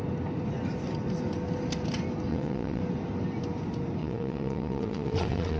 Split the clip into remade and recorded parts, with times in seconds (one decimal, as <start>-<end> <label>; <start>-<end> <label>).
0.0-2.3 recorded; 2.3-2.8 remade; 2.8-4.0 recorded; 4.0-5.6 remade

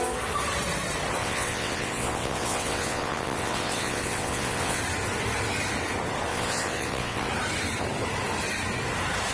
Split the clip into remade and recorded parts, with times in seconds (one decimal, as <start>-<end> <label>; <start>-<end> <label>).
0.0-1.2 recorded; 1.2-4.8 remade; 4.8-6.3 recorded; 6.3-7.3 remade; 7.3-9.3 recorded

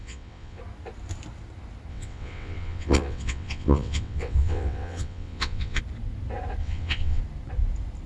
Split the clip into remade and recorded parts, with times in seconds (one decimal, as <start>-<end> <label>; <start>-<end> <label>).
0.0-0.6 remade; 0.6-1.9 recorded; 1.9-5.8 remade; 5.8-6.6 recorded; 6.6-7.2 remade; 7.2-8.1 recorded

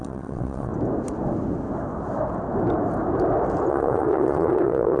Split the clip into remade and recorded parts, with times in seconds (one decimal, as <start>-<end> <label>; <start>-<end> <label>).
0.0-0.7 remade; 0.7-3.7 recorded; 3.7-5.0 remade